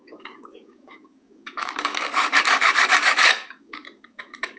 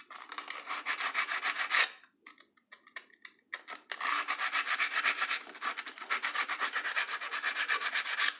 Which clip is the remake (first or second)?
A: first